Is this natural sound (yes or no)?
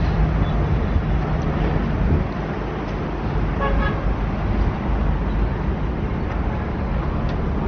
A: yes